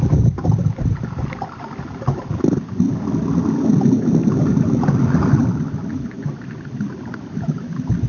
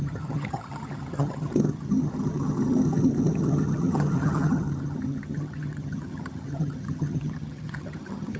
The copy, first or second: second